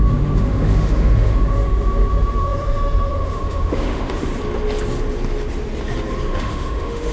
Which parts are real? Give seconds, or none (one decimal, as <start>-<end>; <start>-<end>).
4.3-6.3